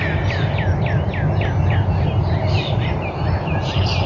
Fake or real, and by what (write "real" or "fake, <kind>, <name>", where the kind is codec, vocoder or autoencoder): real